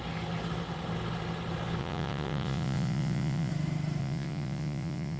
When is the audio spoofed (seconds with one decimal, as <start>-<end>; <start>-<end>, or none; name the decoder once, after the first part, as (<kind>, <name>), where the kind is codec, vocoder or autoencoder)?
1.8-3.5 (vocoder, Vocos); 4.0-5.2